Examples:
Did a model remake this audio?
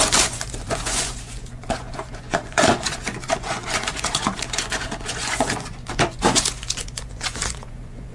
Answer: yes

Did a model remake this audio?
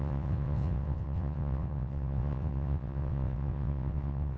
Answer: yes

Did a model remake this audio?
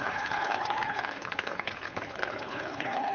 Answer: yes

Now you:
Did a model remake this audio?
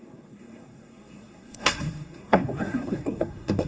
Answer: yes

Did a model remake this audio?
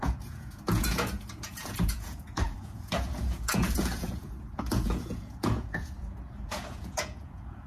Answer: yes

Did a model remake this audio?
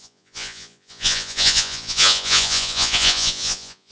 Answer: yes